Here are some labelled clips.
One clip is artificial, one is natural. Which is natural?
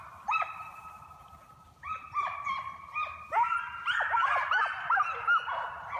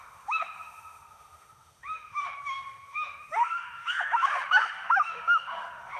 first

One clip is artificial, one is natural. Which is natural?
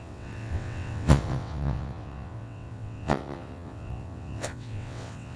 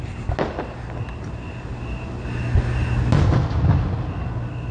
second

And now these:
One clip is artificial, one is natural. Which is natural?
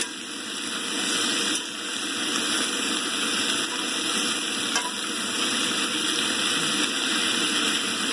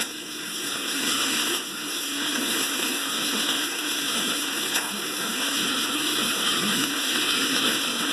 first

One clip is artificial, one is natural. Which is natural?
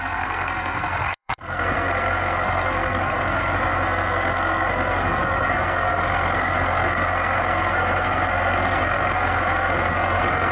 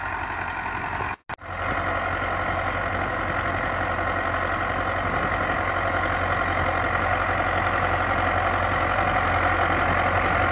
second